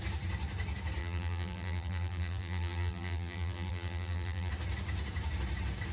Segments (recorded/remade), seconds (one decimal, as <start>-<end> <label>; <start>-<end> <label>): 0.0-1.0 recorded; 1.0-4.5 remade; 4.5-5.9 recorded